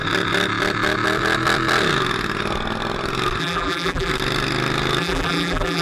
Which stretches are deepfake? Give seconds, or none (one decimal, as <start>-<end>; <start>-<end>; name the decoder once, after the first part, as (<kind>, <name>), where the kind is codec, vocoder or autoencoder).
3.4-4.1 (vocoder, BigVGAN v2); 5.0-5.8